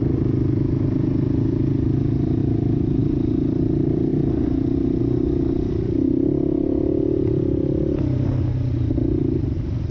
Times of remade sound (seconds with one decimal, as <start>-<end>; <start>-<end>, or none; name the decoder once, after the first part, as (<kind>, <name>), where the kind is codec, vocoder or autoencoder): none